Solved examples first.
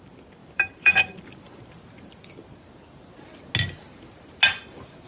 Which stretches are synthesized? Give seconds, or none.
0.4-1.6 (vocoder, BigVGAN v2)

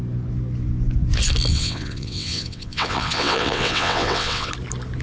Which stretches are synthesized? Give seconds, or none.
1.5-4.5 (vocoder, WaveNeXt)

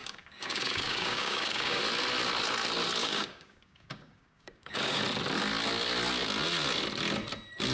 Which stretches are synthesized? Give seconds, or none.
0.0-1.8 (codec, DAC); 3.0-5.0